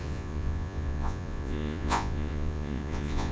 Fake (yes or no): yes